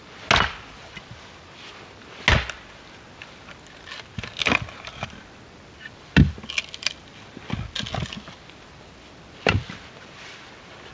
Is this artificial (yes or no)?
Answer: no